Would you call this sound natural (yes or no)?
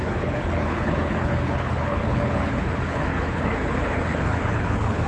no